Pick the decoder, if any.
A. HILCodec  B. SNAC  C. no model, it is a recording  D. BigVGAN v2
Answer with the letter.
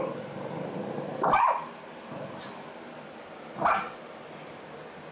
C